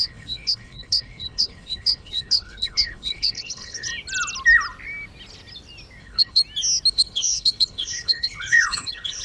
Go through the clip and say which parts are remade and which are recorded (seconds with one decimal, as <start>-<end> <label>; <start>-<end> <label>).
0.0-3.9 remade; 3.9-6.0 recorded; 6.0-6.4 remade; 6.4-6.9 recorded; 6.9-9.2 remade